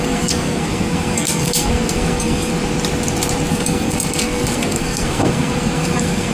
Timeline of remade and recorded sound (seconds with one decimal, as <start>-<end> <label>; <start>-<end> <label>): 0.0-2.5 remade; 2.5-3.5 recorded; 3.5-6.3 remade

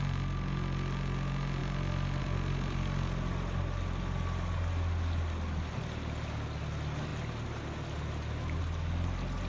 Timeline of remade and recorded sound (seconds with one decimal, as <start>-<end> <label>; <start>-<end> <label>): 0.0-9.5 recorded

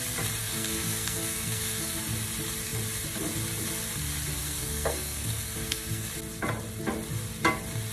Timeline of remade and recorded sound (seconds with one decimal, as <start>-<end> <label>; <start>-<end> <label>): 0.0-0.4 recorded; 0.4-2.0 remade; 2.0-4.4 recorded; 4.4-6.1 remade; 6.1-7.9 recorded

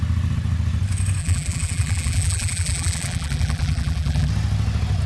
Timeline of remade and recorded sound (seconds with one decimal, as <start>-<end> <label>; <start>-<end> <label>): 0.0-1.2 recorded; 1.2-4.3 remade; 4.3-5.1 recorded

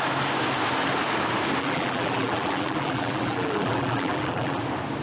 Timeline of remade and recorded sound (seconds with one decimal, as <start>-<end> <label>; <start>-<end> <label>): 0.0-1.6 recorded; 1.6-4.6 remade; 4.6-5.0 recorded

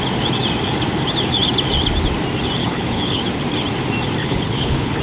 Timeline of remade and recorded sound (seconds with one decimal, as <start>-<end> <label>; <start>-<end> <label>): 0.0-2.6 recorded; 2.6-3.2 remade; 3.2-4.2 recorded; 4.2-5.0 remade